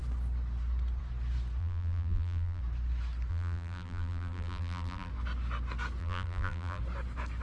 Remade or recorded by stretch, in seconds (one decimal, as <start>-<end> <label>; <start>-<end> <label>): 0.0-1.6 recorded; 1.6-2.6 remade; 2.6-3.3 recorded; 3.3-5.1 remade; 5.1-6.0 recorded; 6.0-6.8 remade; 6.8-7.4 recorded